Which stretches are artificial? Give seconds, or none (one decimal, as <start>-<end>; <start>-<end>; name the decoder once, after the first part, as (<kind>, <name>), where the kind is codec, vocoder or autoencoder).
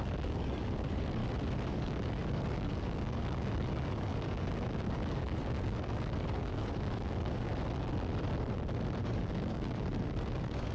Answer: 0.0-1.2 (codec, DAC); 1.7-7.5; 9.0-10.7